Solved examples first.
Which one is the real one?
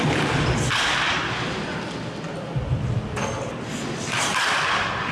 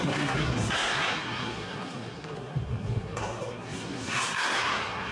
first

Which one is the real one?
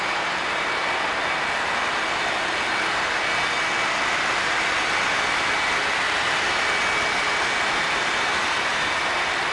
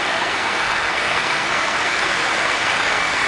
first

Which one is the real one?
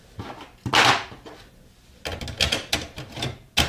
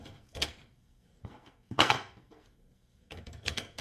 first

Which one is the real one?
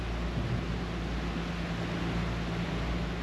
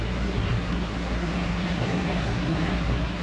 first